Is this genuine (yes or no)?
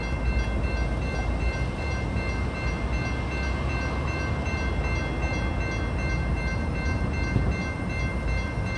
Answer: yes